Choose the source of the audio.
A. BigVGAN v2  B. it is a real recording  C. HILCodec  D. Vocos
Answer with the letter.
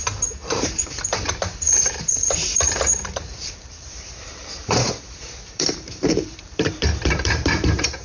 A